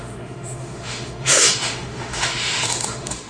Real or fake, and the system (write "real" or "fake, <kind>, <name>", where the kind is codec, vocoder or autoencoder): fake, autoencoder, DAC-VAE